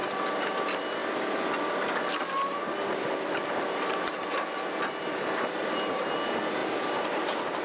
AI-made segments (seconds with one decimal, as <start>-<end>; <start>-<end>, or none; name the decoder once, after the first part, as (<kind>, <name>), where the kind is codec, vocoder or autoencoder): 0.0-1.0 (vocoder, BigVGAN v2); 5.6-7.6